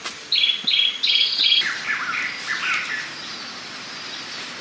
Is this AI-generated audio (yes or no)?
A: no